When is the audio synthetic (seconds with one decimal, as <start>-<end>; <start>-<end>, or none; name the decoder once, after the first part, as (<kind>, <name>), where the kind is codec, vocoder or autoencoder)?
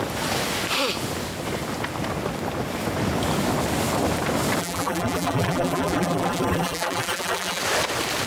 4.6-7.6 (vocoder, BigVGAN v2)